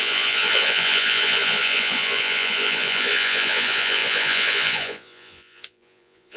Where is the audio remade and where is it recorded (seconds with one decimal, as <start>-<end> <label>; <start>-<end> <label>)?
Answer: 0.0-6.4 remade